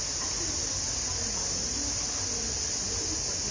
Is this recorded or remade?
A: recorded